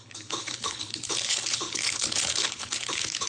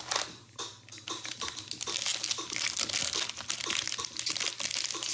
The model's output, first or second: first